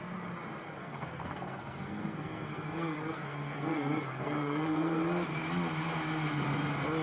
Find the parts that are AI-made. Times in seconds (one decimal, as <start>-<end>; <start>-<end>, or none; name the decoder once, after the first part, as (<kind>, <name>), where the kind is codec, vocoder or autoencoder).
0.8-5.0 (codec, SNAC)